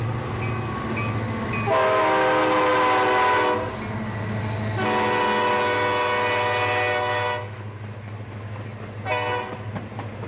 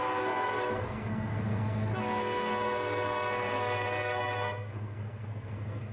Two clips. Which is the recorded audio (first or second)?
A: first